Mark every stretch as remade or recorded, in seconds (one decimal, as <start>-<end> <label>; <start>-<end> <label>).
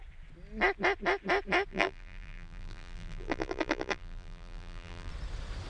0.0-1.7 recorded; 1.7-5.1 remade; 5.1-5.7 recorded